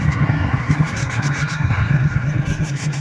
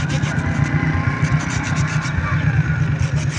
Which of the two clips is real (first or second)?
second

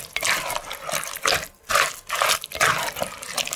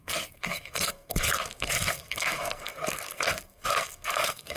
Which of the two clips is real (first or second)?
first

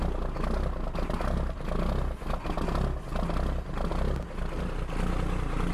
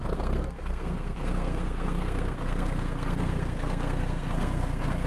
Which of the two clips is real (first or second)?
first